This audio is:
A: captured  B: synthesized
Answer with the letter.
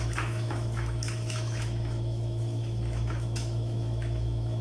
B